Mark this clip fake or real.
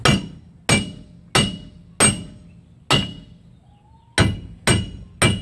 real